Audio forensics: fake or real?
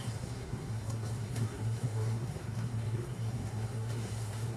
fake